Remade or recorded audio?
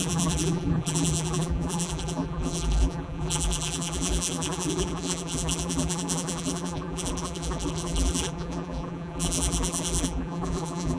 remade